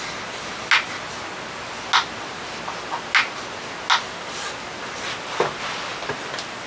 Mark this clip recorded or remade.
recorded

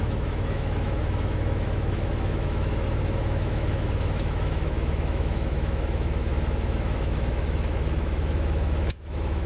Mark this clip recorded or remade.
remade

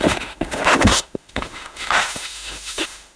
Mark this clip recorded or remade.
remade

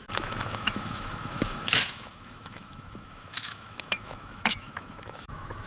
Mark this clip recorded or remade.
remade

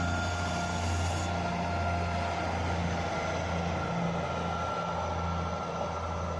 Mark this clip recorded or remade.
recorded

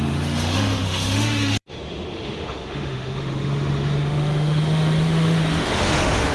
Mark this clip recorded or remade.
remade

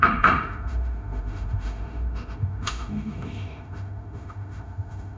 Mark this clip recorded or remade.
remade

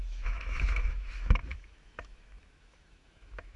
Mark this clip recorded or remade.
remade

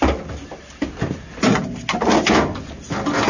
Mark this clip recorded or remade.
recorded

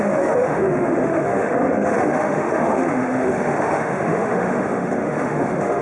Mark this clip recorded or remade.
remade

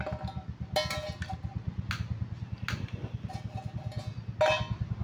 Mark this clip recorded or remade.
recorded